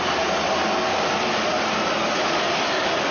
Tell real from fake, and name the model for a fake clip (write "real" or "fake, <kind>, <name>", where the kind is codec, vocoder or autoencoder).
real